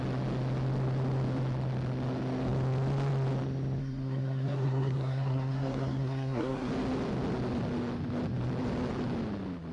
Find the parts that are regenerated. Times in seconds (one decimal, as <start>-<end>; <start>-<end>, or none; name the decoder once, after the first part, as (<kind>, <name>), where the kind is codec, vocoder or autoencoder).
3.8-6.7 (codec, SNAC)